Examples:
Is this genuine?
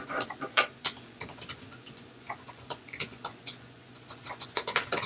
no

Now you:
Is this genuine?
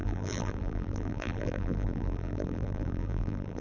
no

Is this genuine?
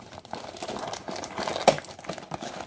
yes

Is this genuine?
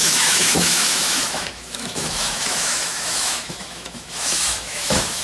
no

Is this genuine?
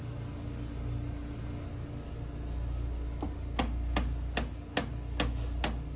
yes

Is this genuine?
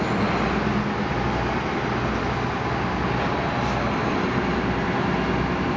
yes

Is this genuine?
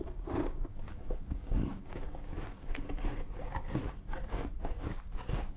no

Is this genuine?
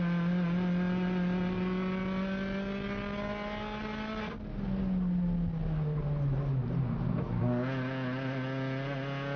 yes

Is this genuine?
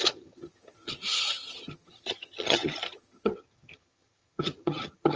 no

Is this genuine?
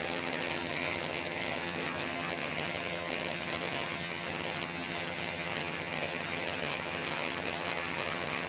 no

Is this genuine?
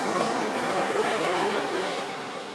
no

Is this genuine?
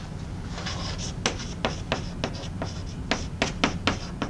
yes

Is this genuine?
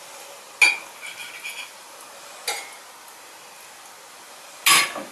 yes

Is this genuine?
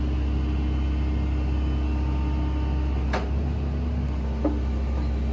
yes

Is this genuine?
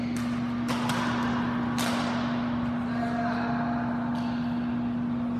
yes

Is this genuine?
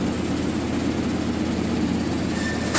yes